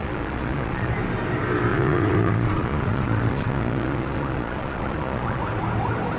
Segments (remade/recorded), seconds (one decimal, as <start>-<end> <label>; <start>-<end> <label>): 0.0-0.9 remade; 0.9-1.7 recorded; 1.7-5.4 remade; 5.4-6.2 recorded